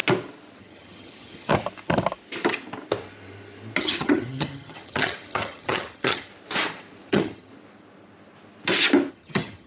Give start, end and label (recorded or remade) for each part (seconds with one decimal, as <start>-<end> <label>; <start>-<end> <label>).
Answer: 0.0-0.6 recorded; 0.6-1.5 remade; 1.5-3.8 recorded; 3.8-6.3 remade; 6.3-7.1 recorded; 7.1-7.5 remade; 7.5-9.1 recorded; 9.1-9.7 remade

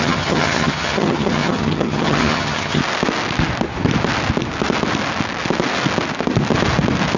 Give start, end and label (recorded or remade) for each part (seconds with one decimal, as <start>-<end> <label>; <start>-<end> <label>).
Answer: 0.0-2.8 remade; 2.8-7.2 recorded

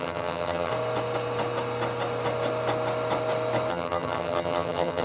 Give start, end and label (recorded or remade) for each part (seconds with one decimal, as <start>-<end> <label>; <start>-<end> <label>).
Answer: 0.0-0.7 remade; 0.7-3.7 recorded; 3.7-5.0 remade

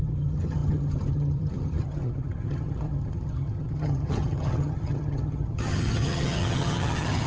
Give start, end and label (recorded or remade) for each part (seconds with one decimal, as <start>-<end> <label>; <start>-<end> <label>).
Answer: 0.0-7.3 remade

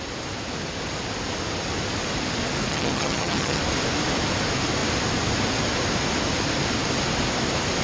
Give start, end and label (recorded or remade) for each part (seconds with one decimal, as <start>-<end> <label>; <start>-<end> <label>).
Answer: 0.0-2.7 recorded; 2.7-3.6 remade; 3.6-7.8 recorded

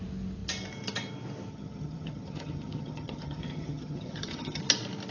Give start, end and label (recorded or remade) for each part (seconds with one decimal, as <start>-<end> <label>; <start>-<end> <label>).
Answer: 0.0-1.5 recorded; 1.5-4.6 remade; 4.6-5.1 recorded

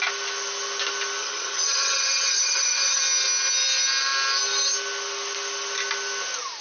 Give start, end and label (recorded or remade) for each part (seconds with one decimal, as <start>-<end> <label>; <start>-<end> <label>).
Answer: 0.0-1.2 recorded; 1.2-3.0 remade; 3.0-6.6 recorded

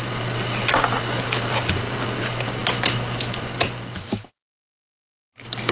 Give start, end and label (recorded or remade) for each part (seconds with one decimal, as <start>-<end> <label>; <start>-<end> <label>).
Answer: 0.0-5.7 recorded